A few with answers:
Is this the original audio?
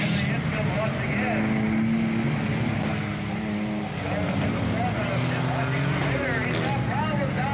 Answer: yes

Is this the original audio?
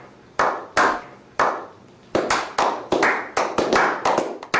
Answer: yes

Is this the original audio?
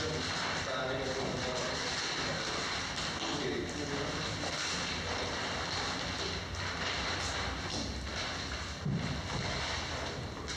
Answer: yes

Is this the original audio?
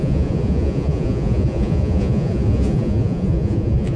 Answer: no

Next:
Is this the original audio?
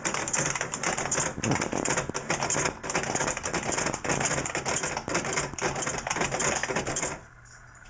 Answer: yes